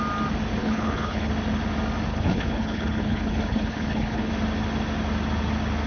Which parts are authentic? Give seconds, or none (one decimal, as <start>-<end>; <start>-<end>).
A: 0.0-0.6; 1.3-2.1; 4.3-5.9

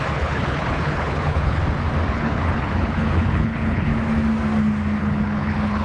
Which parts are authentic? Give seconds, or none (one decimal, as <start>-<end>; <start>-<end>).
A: 1.6-2.1; 3.9-5.0